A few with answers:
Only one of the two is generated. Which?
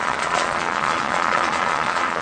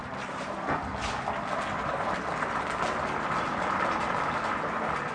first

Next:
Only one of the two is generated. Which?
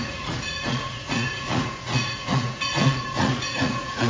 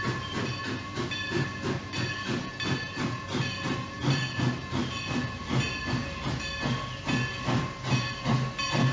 first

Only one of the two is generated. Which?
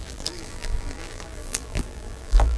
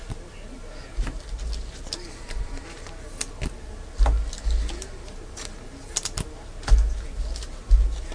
first